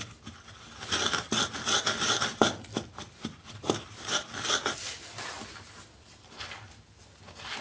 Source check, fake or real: real